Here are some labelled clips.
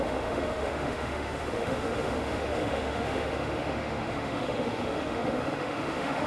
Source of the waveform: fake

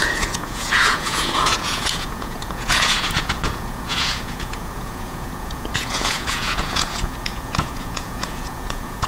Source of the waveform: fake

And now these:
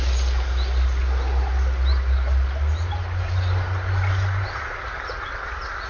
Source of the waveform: real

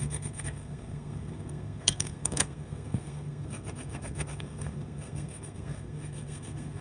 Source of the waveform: fake